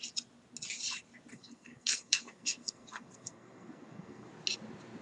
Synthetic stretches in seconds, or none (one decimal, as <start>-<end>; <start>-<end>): 1.3-4.3